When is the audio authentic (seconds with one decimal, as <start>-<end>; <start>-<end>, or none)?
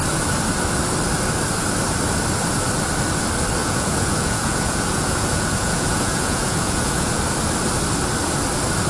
0.0-3.6; 7.2-8.9